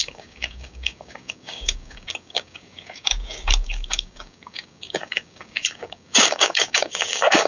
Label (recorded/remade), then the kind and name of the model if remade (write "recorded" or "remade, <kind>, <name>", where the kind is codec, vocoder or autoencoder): remade, codec, DAC